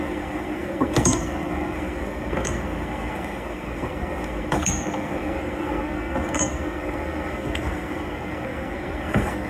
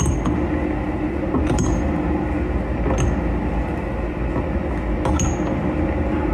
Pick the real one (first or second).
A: second